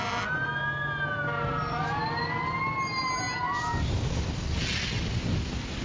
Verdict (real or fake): real